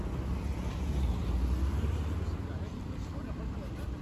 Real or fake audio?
real